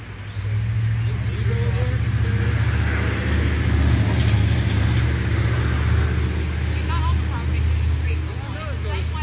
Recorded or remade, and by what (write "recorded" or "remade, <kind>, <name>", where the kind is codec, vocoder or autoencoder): recorded